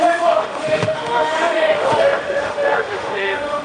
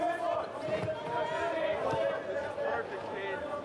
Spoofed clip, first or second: first